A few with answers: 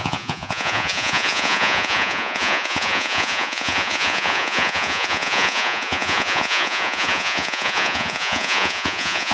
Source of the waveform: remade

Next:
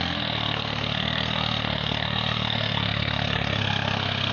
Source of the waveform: remade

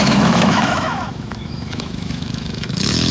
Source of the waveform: remade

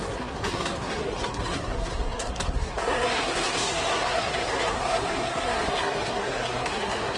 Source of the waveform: remade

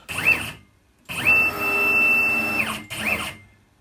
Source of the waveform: recorded